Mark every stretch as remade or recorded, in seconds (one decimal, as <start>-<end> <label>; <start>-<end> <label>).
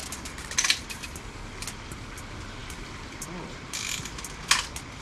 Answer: 0.0-2.6 recorded; 2.6-4.2 remade; 4.2-5.0 recorded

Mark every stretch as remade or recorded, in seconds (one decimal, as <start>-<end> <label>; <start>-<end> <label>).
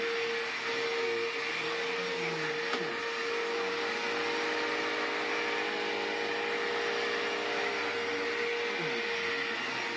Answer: 0.0-10.0 recorded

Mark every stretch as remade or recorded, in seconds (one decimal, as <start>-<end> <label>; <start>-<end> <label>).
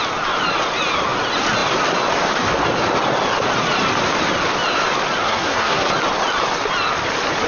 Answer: 0.0-5.2 recorded; 5.2-5.9 remade; 5.9-7.5 recorded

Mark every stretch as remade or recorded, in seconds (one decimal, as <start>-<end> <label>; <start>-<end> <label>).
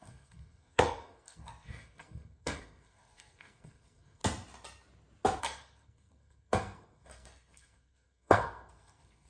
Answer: 0.0-4.2 remade; 4.2-5.4 recorded; 5.4-9.3 remade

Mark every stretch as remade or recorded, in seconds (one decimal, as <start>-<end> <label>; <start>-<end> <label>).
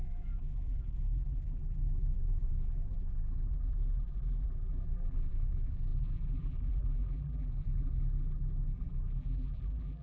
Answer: 0.0-10.0 remade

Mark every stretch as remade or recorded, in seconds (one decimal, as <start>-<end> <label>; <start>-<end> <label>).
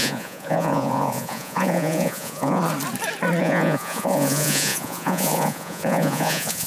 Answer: 0.0-2.6 remade; 2.6-3.4 recorded; 3.4-6.7 remade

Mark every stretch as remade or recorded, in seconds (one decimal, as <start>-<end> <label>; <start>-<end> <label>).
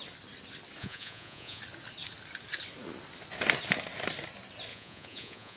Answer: 0.0-0.8 recorded; 0.8-1.6 remade; 1.6-4.7 recorded; 4.7-5.6 remade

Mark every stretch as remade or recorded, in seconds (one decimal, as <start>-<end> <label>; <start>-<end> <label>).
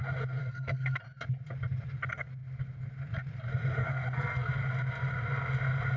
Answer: 0.0-0.4 recorded; 0.4-1.0 remade; 1.0-3.8 recorded; 3.8-4.5 remade; 4.5-6.0 recorded